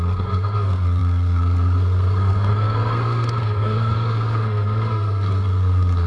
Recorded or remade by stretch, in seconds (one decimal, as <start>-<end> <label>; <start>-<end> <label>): 0.0-6.1 remade